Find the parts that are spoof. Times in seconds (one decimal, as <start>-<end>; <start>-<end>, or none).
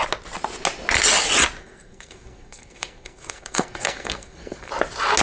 1.6-4.7